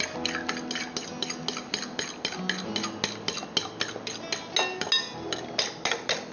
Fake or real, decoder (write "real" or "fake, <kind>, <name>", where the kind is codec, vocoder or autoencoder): real